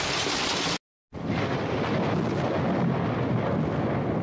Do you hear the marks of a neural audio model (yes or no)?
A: no